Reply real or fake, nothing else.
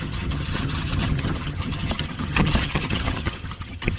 fake